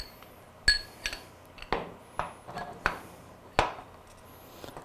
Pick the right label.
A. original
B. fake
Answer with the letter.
A